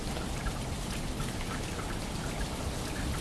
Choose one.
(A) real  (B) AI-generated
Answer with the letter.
A